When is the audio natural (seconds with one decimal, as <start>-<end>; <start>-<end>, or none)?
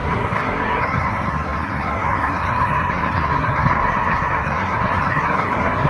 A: none